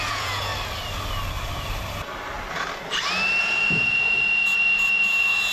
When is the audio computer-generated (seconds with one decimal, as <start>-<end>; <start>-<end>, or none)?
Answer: 0.0-0.5; 3.4-5.5